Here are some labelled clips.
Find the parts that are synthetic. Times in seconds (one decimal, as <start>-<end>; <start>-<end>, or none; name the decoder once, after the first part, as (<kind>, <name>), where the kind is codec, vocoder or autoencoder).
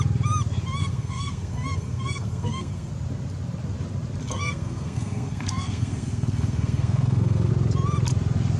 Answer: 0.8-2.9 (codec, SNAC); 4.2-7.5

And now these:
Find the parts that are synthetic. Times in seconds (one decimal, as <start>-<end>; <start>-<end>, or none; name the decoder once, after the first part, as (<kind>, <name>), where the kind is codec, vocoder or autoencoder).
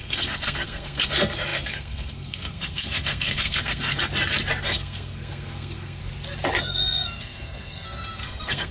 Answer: 0.0-4.0 (codec, SNAC); 4.6-6.0; 6.6-8.7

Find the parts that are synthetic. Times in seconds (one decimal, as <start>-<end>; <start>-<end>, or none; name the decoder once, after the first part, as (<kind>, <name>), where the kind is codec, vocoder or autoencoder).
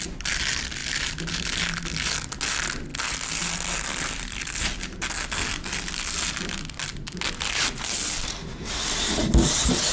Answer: none